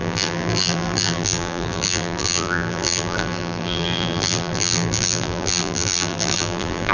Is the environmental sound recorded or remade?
remade